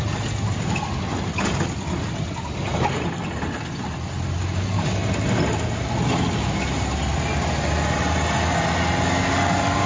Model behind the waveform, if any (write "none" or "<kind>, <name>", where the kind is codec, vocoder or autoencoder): none